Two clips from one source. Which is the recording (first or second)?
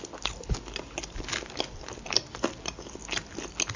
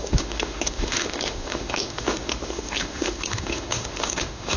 first